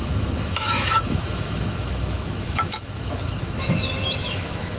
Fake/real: fake